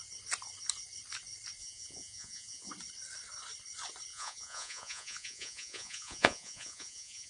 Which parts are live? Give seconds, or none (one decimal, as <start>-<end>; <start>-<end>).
0.0-1.6; 2.7-4.1